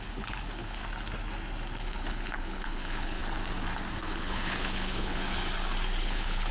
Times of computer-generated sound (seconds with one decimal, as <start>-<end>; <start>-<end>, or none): 0.0-0.8; 1.8-3.2; 4.0-5.4; 6.0-6.5